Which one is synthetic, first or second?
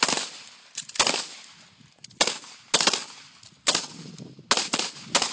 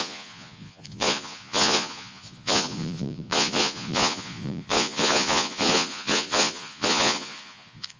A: second